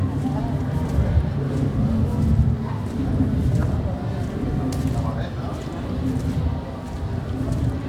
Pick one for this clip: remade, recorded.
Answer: recorded